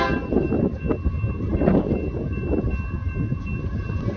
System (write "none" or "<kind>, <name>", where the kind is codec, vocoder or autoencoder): none